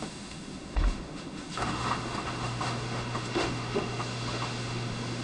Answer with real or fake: fake